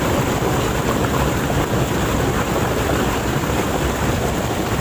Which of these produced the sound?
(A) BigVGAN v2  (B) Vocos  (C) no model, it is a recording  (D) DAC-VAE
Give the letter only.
C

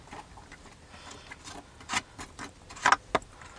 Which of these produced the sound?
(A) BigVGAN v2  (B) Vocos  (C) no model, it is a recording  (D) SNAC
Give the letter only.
C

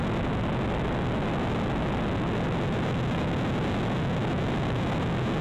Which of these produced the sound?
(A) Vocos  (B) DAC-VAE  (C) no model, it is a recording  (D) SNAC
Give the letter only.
C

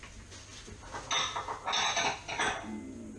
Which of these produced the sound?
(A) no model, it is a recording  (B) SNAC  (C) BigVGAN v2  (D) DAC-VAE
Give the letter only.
A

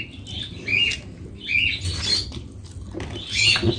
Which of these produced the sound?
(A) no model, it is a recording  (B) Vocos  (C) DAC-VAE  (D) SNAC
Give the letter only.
A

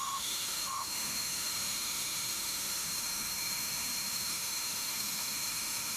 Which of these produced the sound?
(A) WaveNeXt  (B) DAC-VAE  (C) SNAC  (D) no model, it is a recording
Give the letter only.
B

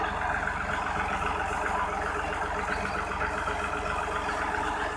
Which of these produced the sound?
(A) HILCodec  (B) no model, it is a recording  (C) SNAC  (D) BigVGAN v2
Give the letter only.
B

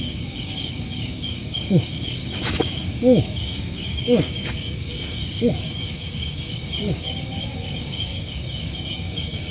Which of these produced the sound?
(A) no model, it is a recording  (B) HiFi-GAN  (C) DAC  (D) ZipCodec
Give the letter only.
C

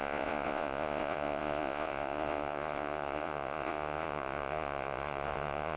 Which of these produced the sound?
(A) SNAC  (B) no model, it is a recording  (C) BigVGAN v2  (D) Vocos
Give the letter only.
D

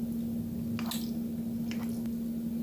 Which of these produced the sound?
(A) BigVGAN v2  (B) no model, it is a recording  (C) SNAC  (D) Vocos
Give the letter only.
B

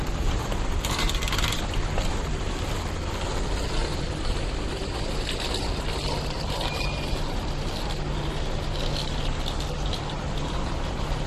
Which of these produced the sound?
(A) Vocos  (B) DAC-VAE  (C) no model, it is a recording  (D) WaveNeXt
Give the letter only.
C